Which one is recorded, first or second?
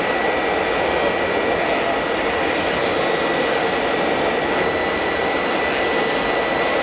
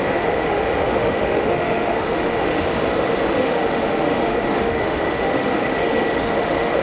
first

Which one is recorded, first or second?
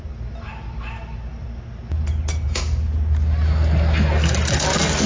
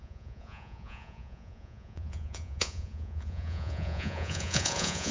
first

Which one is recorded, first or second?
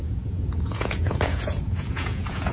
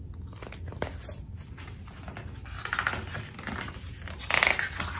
second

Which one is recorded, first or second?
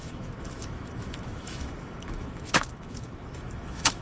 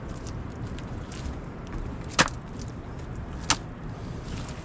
second